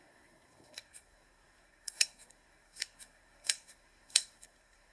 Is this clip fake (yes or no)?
yes